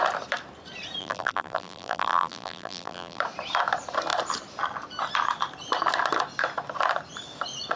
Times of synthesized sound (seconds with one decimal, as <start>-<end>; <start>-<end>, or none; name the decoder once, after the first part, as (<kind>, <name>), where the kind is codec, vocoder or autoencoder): 1.0-3.2 (vocoder, BigVGAN v2)